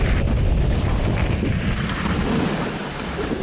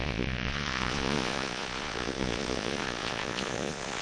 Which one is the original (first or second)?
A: first